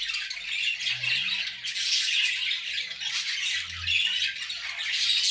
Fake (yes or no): no